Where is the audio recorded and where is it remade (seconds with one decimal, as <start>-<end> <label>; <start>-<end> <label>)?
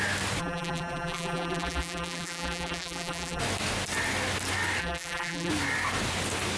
0.0-0.4 recorded; 0.4-3.4 remade; 3.4-4.8 recorded; 4.8-5.5 remade; 5.5-6.6 recorded